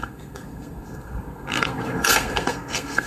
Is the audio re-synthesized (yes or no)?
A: yes